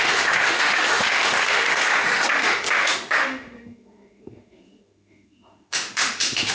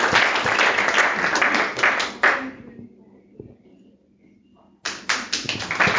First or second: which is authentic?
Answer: second